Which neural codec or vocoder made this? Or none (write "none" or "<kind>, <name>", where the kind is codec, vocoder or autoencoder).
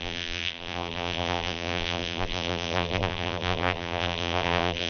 vocoder, BigVGAN v2